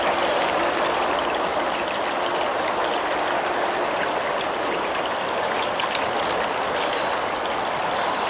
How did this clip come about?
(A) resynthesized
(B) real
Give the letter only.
B